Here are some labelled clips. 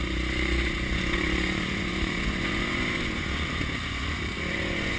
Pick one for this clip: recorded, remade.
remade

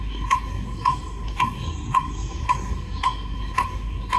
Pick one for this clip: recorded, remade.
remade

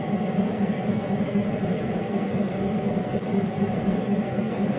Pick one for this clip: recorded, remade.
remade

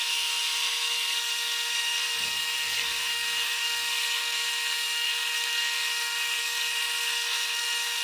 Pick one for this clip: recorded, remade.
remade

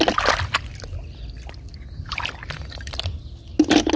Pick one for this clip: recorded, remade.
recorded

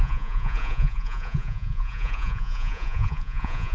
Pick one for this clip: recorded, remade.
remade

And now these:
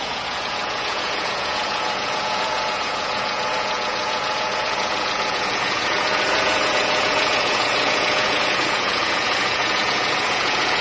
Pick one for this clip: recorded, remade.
remade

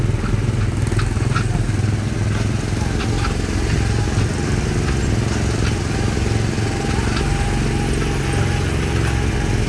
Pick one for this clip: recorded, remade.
recorded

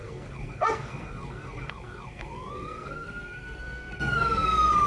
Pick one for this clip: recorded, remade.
remade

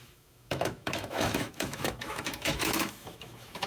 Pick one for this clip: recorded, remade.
remade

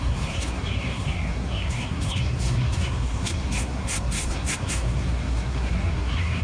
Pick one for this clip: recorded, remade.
remade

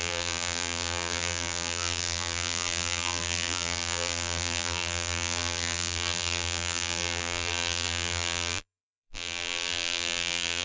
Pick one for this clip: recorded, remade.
remade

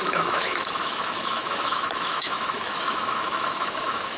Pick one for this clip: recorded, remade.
remade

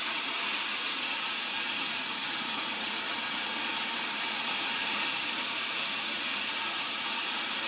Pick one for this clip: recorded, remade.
remade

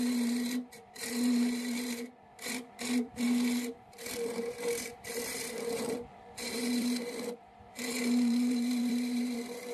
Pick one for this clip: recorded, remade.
remade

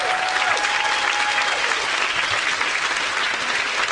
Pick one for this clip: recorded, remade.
recorded